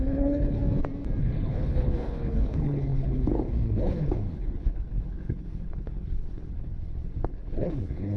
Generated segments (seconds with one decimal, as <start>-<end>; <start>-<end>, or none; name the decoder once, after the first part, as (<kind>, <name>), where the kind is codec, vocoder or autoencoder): 0.0-0.6 (codec, HILCodec); 1.2-8.2